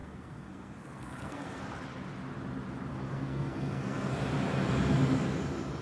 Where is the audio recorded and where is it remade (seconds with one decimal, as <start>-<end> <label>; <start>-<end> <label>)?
0.0-1.7 remade; 1.7-2.9 recorded; 2.9-4.1 remade; 4.1-5.8 recorded